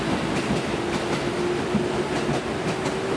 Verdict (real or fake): real